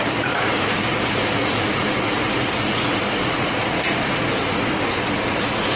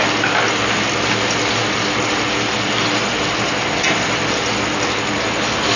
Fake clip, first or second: first